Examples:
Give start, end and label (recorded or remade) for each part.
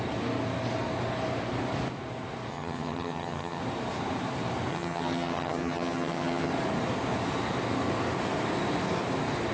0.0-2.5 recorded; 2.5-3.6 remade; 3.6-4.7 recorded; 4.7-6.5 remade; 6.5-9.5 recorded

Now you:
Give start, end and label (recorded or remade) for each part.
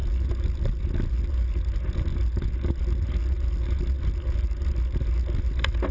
0.0-5.9 recorded